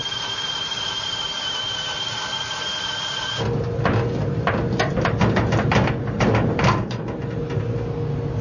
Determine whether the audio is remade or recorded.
recorded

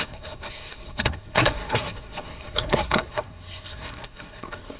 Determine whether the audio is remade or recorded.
remade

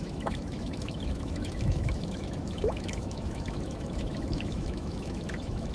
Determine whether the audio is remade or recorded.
remade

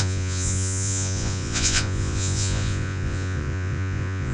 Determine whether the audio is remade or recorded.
remade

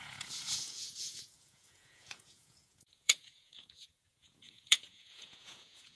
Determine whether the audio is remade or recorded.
remade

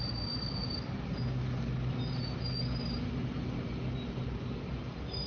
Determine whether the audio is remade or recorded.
recorded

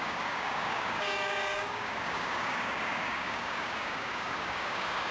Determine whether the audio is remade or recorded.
remade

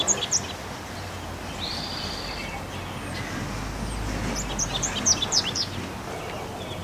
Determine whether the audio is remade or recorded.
recorded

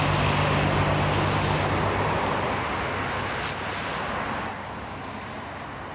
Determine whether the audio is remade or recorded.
recorded